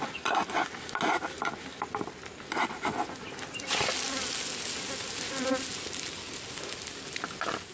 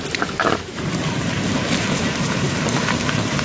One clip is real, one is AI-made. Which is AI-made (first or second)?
second